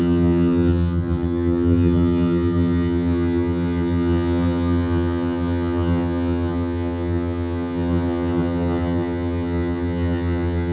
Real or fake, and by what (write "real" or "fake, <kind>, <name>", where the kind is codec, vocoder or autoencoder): fake, vocoder, HiFi-GAN